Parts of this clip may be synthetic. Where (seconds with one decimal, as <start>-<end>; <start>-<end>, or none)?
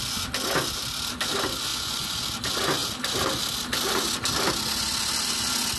1.7-2.2